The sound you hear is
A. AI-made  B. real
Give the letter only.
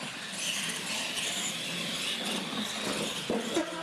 B